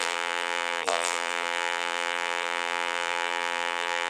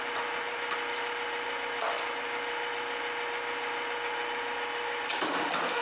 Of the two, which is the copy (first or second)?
first